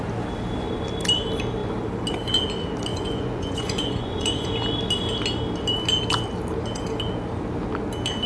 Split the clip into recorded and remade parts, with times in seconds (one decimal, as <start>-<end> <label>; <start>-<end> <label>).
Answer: 0.0-2.9 recorded; 2.9-4.5 remade; 4.5-8.3 recorded